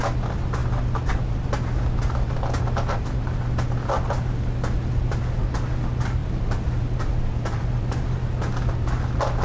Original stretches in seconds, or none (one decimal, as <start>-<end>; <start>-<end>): 0.0-6.2; 7.6-9.4